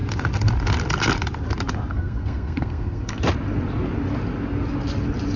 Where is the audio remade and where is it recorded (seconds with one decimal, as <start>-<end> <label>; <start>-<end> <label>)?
0.0-1.9 recorded; 1.9-3.2 remade; 3.2-5.4 recorded